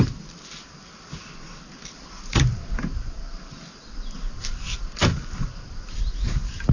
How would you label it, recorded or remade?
recorded